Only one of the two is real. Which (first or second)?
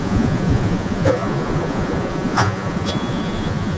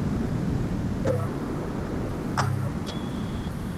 second